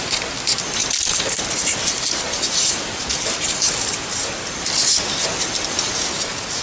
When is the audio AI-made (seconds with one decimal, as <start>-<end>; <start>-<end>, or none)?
0.8-4.4